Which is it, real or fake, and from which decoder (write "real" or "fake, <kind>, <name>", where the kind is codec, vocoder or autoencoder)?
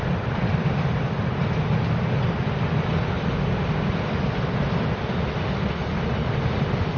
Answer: real